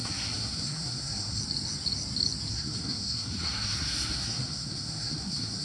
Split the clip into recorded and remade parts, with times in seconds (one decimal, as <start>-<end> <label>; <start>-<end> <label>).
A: 0.0-1.4 remade; 1.4-2.5 recorded; 2.5-5.6 remade